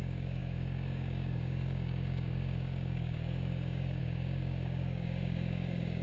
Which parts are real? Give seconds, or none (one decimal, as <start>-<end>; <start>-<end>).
none